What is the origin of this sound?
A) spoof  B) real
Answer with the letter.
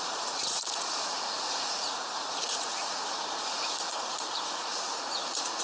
A